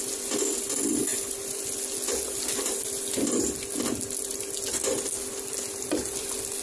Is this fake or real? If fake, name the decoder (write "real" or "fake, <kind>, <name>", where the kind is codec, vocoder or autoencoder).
real